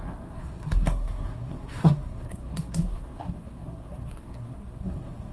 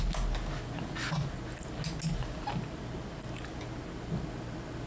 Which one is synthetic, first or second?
first